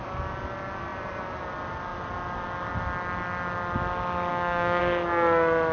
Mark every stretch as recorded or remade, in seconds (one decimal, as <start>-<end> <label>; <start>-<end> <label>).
0.0-4.3 recorded; 4.3-4.8 remade; 4.8-5.7 recorded